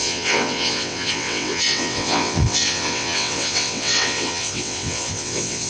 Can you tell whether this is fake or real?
fake